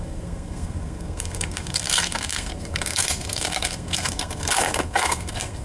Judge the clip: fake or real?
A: fake